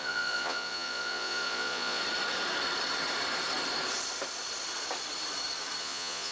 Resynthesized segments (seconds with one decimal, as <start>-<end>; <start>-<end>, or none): 0.0-2.0; 5.8-6.3